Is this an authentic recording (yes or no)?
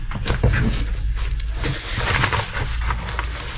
yes